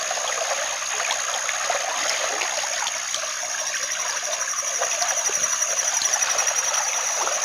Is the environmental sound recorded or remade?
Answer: recorded